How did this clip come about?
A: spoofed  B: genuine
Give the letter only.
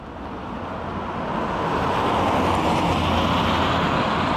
B